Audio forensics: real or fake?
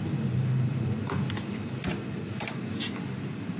real